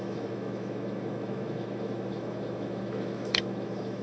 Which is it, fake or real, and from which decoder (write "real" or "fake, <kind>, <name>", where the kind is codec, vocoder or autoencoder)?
fake, autoencoder, DAC-VAE